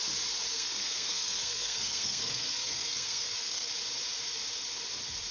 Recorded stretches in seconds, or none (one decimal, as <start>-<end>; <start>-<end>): 0.0-0.5; 3.7-5.3